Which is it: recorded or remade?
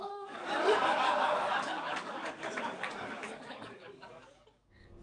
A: remade